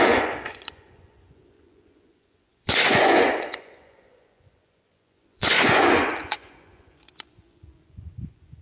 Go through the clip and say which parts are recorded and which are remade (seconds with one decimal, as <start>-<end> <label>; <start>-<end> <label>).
0.0-8.6 remade